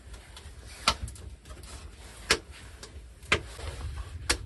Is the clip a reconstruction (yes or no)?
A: no